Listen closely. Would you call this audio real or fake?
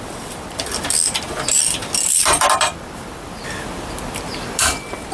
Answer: fake